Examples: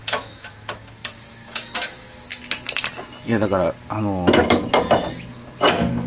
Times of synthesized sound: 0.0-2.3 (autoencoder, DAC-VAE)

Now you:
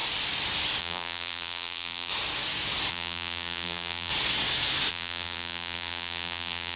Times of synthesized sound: 0.8-2.1 (vocoder, BigVGAN v2); 2.9-4.1; 4.9-6.8

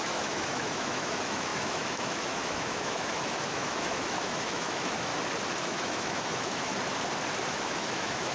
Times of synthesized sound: 0.0-5.1 (autoencoder, DAC-VAE); 5.6-6.7; 7.5-8.3